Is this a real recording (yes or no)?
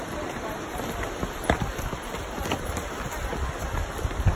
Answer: yes